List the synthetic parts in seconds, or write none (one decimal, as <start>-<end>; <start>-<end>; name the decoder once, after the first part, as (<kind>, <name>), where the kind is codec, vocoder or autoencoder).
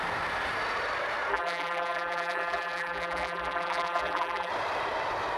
1.3-4.5 (vocoder, BigVGAN v2)